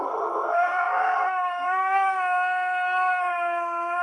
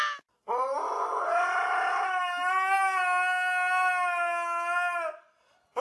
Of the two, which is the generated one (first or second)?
first